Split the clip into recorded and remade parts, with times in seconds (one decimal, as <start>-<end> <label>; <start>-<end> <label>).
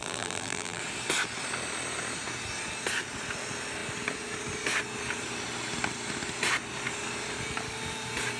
0.0-0.8 remade; 0.8-8.4 recorded